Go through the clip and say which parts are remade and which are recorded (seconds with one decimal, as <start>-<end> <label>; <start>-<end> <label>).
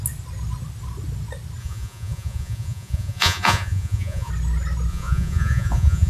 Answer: 0.0-1.6 recorded; 1.6-4.3 remade; 4.3-4.9 recorded; 4.9-6.1 remade